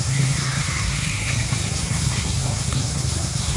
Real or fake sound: fake